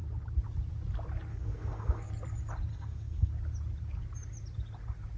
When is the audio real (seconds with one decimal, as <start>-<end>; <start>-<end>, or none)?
0.0-1.3; 2.1-2.7; 3.3-5.2